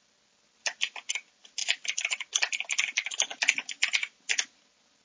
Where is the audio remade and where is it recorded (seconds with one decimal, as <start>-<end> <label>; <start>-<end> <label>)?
0.0-5.0 recorded

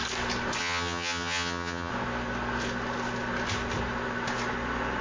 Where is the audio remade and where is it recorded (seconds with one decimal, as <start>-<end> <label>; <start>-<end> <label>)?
0.0-0.6 recorded; 0.6-1.9 remade; 1.9-5.0 recorded

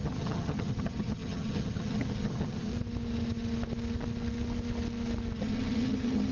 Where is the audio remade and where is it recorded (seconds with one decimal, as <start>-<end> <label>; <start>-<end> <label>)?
0.0-2.7 remade; 2.7-5.4 recorded; 5.4-6.3 remade